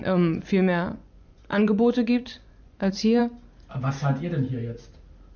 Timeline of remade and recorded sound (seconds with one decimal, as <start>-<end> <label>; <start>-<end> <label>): 0.0-3.2 remade; 3.2-5.4 recorded